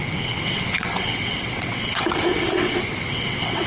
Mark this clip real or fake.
fake